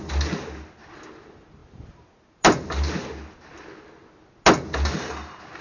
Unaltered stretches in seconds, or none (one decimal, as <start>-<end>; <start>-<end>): 0.0-5.6